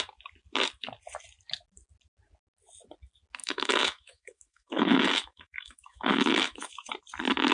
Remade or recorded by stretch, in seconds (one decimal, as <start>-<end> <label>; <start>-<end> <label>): 0.0-3.4 recorded; 3.4-6.9 remade; 6.9-7.5 recorded